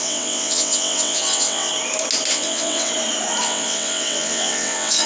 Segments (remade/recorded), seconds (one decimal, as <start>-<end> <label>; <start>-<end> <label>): 0.0-1.7 remade; 1.7-2.3 recorded; 2.3-2.9 remade; 2.9-3.4 recorded; 3.4-5.1 remade